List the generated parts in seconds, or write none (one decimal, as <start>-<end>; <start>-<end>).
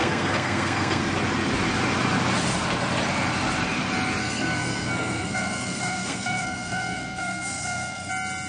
0.0-1.0; 4.2-8.1